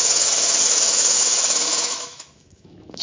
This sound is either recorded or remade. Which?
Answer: remade